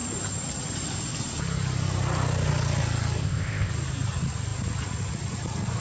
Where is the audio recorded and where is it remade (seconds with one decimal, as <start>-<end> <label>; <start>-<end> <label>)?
0.0-3.2 recorded; 3.2-3.7 remade; 3.7-5.8 recorded